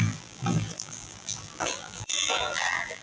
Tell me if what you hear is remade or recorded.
remade